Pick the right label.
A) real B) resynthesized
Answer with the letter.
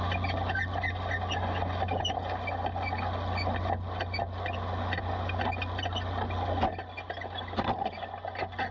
A